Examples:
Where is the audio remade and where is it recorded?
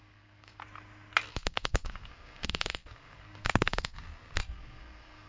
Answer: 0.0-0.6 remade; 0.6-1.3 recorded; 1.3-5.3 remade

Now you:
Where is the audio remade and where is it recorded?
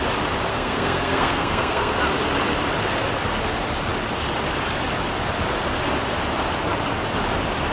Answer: 0.0-0.5 recorded; 0.5-2.0 remade; 2.0-7.7 recorded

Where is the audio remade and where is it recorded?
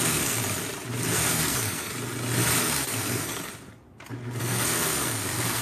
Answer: 0.0-0.4 remade; 0.4-1.1 recorded; 1.1-1.9 remade; 1.9-2.6 recorded; 2.6-3.5 remade; 3.5-4.4 recorded; 4.4-5.6 remade